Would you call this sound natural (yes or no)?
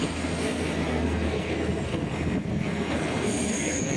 no